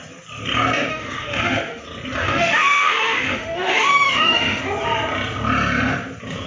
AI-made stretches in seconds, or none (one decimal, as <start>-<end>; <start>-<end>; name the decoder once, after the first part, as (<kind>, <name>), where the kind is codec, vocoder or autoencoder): 0.9-1.8 (autoencoder, DAC-VAE); 2.2-4.6